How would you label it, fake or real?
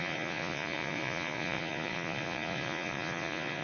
fake